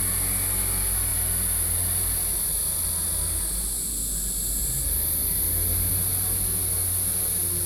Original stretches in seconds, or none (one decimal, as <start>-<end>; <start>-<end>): 0.0-7.7